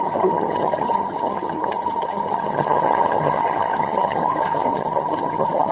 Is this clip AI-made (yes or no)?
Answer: yes